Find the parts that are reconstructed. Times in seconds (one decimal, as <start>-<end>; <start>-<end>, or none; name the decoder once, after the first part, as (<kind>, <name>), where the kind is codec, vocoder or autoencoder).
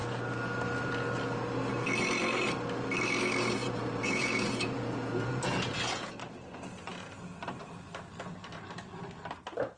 3.6-6.1 (vocoder, Vocos)